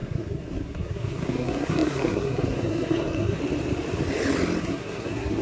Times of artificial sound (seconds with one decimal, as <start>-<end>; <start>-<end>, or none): 0.0-3.4; 4.6-5.4